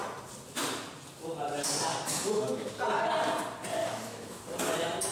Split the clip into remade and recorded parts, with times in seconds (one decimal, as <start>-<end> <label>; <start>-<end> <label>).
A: 0.0-1.9 recorded; 1.9-2.7 remade; 2.7-3.8 recorded; 3.8-4.4 remade; 4.4-5.1 recorded